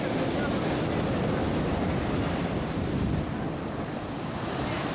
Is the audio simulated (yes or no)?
yes